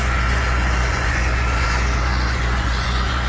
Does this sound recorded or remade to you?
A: remade